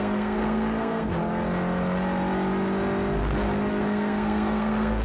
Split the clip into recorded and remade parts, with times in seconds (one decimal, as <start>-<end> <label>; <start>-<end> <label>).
0.0-1.1 remade; 1.1-3.7 recorded; 3.7-5.0 remade